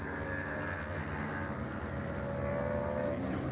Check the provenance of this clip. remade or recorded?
recorded